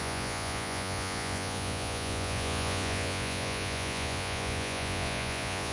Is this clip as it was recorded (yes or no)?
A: no